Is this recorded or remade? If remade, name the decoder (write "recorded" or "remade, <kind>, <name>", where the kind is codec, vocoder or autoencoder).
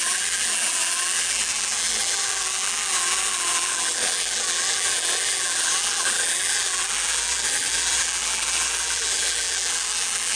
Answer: remade, vocoder, BigVGAN v2